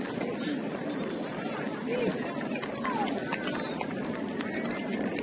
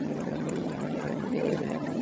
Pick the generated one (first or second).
second